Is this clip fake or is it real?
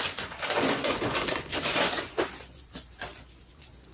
fake